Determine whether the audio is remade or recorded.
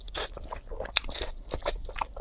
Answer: recorded